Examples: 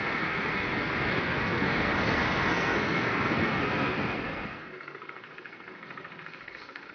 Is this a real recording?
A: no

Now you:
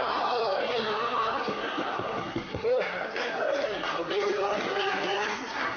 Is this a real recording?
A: no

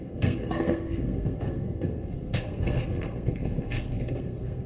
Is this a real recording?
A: no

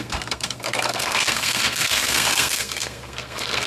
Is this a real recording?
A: no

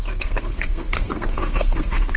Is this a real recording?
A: no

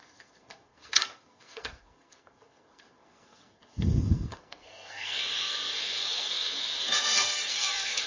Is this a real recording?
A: no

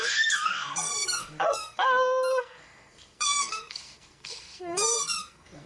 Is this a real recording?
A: no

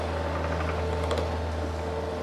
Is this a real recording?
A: yes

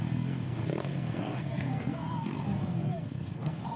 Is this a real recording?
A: no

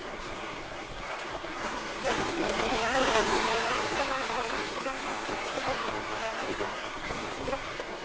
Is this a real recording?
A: no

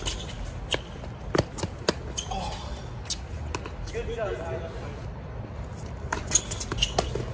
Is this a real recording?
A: yes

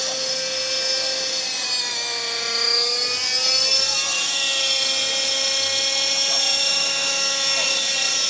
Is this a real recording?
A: yes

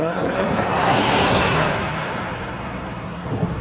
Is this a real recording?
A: no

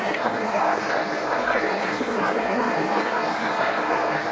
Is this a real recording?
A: no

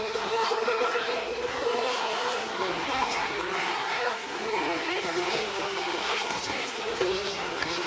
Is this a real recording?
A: no